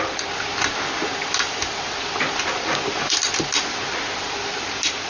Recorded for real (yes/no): yes